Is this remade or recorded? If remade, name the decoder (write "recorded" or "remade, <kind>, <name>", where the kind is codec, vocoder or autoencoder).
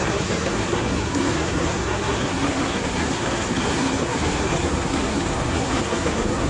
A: remade, codec, SNAC